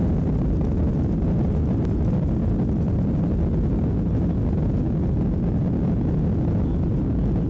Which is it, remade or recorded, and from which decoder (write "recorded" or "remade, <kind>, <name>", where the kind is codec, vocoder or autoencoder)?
recorded